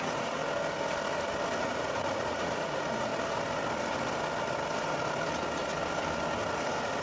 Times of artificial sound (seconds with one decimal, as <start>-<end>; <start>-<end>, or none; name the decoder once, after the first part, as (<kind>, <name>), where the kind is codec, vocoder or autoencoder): 0.0-0.4 (vocoder, Vocos); 1.6-3.1